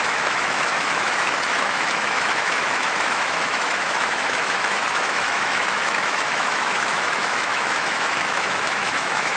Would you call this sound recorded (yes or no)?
no